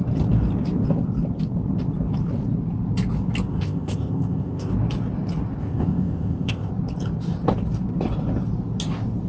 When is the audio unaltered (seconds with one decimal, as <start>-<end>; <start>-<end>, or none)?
0.0-3.5; 4.7-5.6; 6.7-9.3